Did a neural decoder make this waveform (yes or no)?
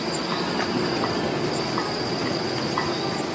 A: no